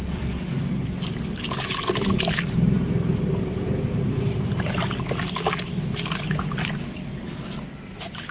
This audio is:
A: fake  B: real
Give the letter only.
B